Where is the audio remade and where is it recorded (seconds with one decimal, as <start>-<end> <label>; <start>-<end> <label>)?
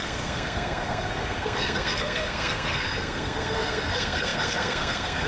0.0-5.3 remade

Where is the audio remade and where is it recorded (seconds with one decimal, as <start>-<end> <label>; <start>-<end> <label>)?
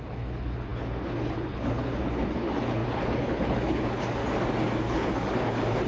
0.0-4.2 remade; 4.2-4.8 recorded; 4.8-5.9 remade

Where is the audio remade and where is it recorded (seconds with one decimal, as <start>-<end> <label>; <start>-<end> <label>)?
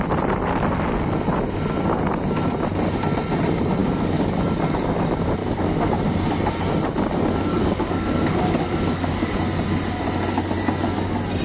0.0-3.8 recorded; 3.8-4.4 remade; 4.4-5.4 recorded; 5.4-5.9 remade; 5.9-7.5 recorded; 7.5-9.3 remade; 9.3-11.4 recorded